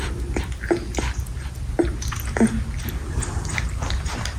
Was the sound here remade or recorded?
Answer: recorded